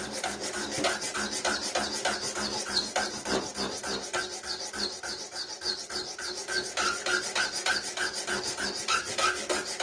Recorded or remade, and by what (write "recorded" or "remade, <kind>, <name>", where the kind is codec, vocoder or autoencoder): recorded